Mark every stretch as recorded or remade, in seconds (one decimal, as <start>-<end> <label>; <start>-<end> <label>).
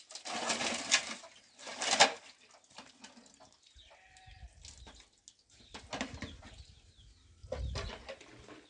0.0-8.7 recorded